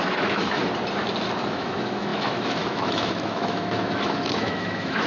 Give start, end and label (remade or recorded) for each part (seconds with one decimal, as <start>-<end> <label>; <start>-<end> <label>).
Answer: 0.0-0.6 remade; 0.6-1.5 recorded; 1.5-5.1 remade